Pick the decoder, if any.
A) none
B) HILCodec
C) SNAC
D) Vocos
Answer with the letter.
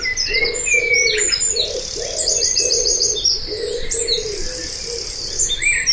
A